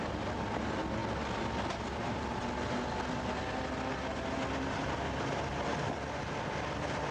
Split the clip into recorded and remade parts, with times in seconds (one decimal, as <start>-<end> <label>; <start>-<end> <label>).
0.0-7.1 recorded